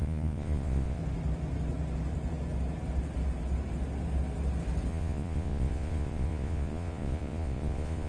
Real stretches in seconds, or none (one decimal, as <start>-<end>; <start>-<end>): 1.0-4.9